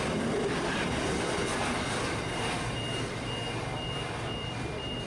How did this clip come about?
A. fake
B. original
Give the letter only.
B